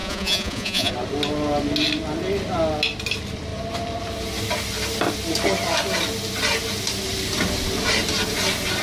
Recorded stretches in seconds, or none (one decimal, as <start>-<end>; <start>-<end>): 0.9-8.8